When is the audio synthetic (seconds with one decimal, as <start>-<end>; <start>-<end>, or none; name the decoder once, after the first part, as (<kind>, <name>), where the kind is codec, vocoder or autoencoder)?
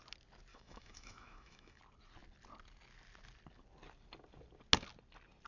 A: 0.5-1.8 (autoencoder, DAC-VAE)